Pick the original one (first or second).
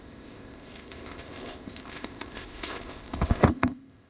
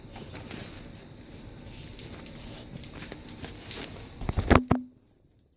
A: second